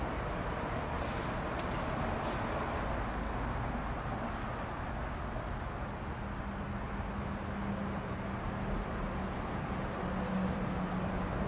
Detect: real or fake real